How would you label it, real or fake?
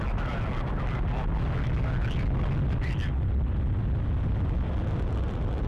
real